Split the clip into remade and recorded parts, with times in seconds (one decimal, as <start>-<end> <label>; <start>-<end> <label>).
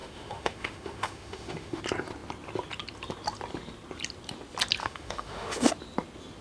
0.0-1.8 remade; 1.8-4.8 recorded; 4.8-5.7 remade; 5.7-6.4 recorded